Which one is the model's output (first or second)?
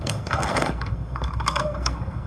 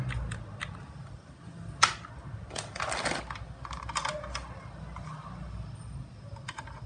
first